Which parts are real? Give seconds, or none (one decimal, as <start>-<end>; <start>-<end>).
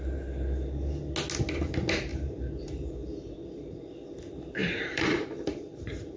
0.0-2.1; 3.9-4.6